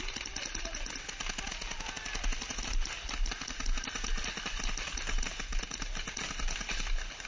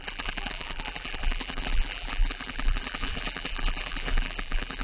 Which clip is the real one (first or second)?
first